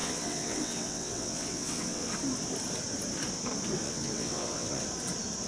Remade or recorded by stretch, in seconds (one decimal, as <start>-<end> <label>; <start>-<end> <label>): 0.0-2.1 remade; 2.1-3.8 recorded; 3.8-4.8 remade; 4.8-5.5 recorded